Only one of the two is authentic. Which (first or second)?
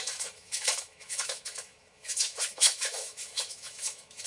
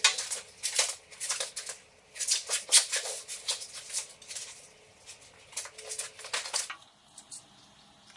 second